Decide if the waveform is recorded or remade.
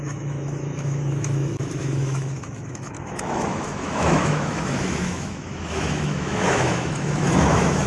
remade